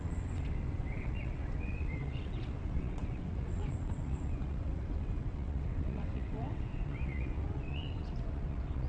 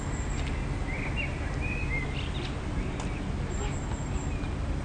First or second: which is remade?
first